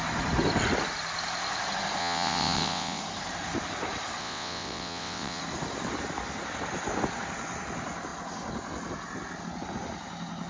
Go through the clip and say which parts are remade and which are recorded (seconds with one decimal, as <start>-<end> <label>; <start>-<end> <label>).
0.0-2.0 recorded; 2.0-3.0 remade; 3.0-4.2 recorded; 4.2-5.4 remade; 5.4-10.5 recorded